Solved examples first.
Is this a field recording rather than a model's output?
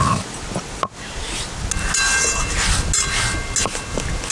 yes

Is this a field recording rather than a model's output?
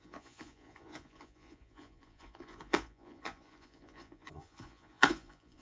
no